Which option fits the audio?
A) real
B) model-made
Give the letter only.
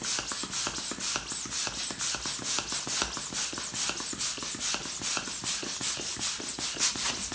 A